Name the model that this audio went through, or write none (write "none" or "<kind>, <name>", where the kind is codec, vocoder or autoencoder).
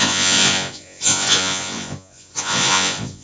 vocoder, Vocos